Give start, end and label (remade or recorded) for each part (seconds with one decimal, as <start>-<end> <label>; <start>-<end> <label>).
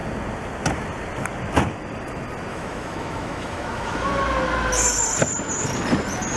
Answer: 0.0-2.5 recorded; 2.5-4.2 remade; 4.2-6.4 recorded